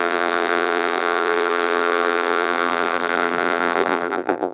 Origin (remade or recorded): remade